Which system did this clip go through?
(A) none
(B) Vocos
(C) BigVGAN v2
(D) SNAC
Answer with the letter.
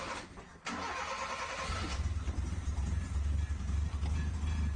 A